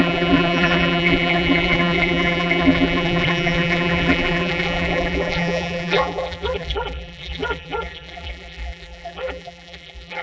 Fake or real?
fake